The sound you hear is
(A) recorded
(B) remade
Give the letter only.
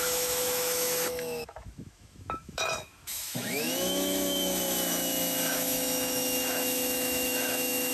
B